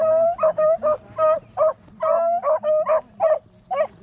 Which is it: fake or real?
real